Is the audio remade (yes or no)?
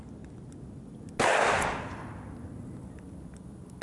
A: no